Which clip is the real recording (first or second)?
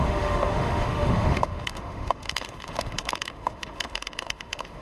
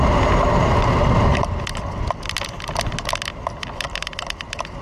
second